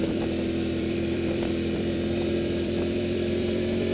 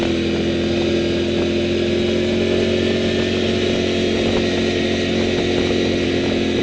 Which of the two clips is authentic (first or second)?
second